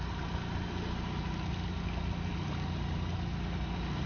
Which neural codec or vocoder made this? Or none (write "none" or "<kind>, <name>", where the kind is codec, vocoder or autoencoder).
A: none